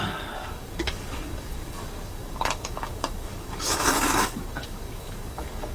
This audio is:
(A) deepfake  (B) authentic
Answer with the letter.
A